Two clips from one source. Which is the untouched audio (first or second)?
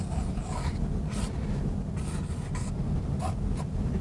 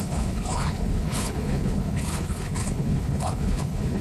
first